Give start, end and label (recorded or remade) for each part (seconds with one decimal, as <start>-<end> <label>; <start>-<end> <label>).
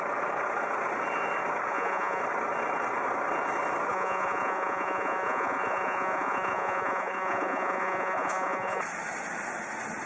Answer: 0.0-1.7 recorded; 1.7-2.2 remade; 2.2-3.9 recorded; 3.9-8.8 remade; 8.8-10.1 recorded